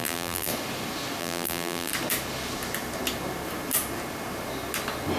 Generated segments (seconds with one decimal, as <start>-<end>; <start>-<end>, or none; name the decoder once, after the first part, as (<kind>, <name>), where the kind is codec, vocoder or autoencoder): 0.0-0.5 (vocoder, BigVGAN v2); 1.2-1.9